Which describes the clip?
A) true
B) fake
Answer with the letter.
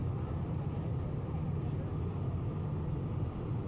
A